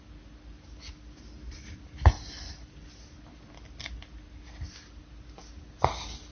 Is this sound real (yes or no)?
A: yes